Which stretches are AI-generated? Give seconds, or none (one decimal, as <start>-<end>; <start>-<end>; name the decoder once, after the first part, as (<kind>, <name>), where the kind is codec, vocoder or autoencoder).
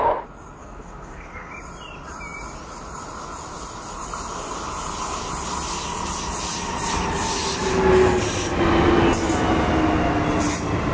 0.6-1.5 (codec, SNAC)